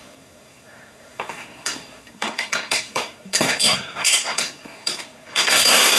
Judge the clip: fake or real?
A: fake